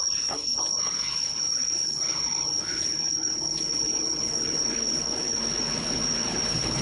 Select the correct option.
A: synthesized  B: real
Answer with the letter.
A